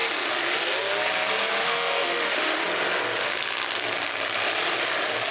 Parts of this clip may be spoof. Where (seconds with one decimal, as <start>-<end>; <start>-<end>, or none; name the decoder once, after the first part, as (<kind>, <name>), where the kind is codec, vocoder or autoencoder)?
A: 1.6-2.6 (autoencoder, DAC-VAE)